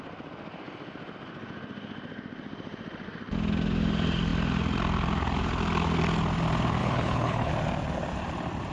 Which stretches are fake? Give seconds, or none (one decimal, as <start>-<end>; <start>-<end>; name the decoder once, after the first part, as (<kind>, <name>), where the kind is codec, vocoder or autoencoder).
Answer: 6.8-7.5 (codec, HILCodec)